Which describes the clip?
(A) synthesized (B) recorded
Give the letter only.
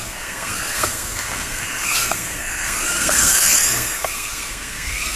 A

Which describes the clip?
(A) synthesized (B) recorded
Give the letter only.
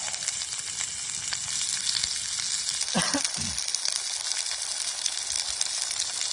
B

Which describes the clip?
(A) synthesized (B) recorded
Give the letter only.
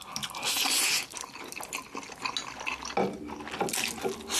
B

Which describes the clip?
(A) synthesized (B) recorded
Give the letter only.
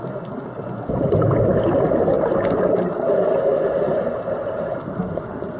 B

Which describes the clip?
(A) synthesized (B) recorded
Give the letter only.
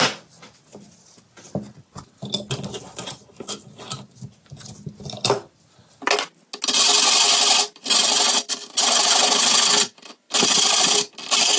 B